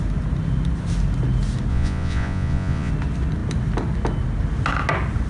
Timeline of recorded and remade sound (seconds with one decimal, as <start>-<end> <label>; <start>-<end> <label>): 0.0-1.7 recorded; 1.7-2.9 remade; 2.9-5.3 recorded